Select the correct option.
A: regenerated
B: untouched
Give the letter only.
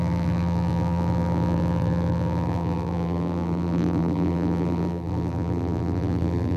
A